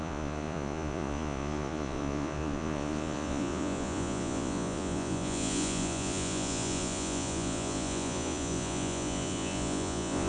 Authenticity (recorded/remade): remade